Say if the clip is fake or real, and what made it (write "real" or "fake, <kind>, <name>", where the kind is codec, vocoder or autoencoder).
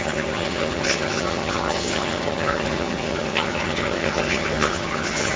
fake, vocoder, HiFi-GAN